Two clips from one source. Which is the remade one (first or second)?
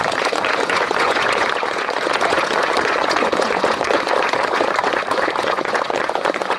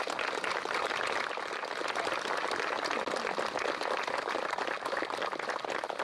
first